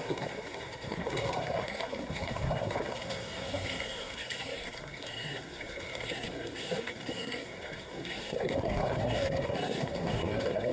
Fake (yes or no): yes